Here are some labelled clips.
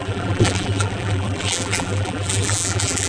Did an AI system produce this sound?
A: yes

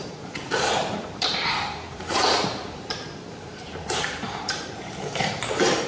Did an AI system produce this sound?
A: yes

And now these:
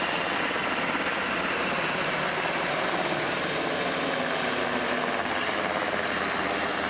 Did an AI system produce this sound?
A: no